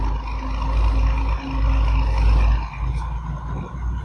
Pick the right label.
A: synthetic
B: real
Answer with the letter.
B